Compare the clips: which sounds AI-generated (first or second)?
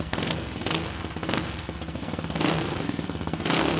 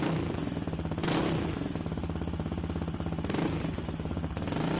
first